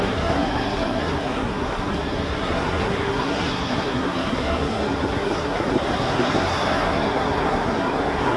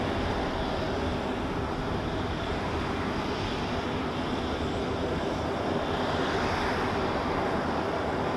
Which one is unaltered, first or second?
second